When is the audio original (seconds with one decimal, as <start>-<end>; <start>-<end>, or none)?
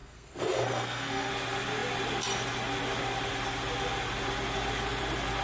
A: 1.3-5.4